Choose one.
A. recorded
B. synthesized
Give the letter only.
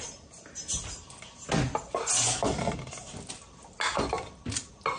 A